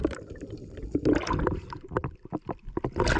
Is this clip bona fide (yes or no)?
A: yes